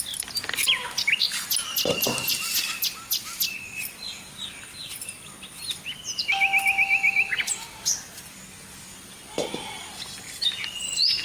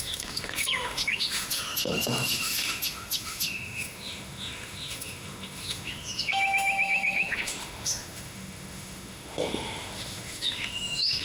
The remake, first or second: second